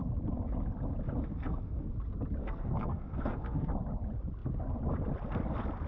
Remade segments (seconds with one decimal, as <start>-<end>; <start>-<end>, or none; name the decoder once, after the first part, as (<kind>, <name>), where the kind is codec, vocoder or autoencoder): 1.3-1.9 (codec, SNAC); 2.4-3.7